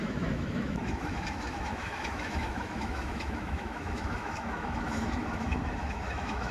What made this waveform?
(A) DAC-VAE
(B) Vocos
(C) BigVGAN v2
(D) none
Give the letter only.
A